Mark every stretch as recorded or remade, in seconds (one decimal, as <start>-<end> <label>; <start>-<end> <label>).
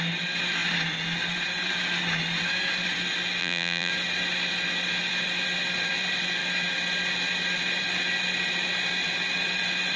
0.0-3.4 recorded; 3.4-3.9 remade; 3.9-10.0 recorded